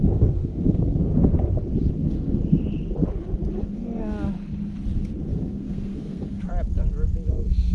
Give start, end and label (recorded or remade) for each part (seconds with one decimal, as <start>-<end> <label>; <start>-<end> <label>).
0.0-1.1 remade; 1.1-1.9 recorded; 1.9-2.4 remade; 2.4-3.6 recorded; 3.6-4.0 remade; 4.0-5.2 recorded; 5.2-6.5 remade; 6.5-7.3 recorded; 7.3-7.7 remade